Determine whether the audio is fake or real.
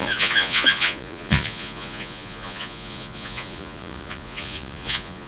fake